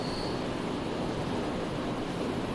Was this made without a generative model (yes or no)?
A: yes